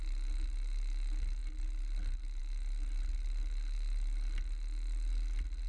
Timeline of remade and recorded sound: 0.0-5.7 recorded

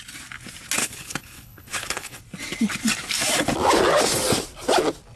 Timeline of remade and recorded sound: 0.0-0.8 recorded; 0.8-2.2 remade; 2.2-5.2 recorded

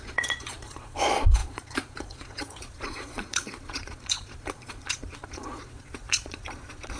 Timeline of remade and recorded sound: 0.0-7.0 remade

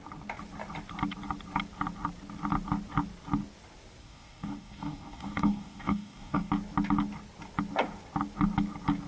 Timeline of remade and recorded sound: 0.0-4.0 recorded; 4.0-6.5 remade; 6.5-9.1 recorded